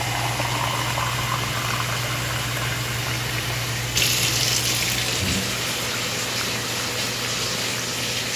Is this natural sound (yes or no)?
yes